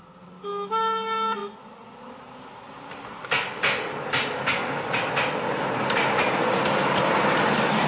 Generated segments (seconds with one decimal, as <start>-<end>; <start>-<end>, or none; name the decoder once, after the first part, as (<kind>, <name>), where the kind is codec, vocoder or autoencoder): none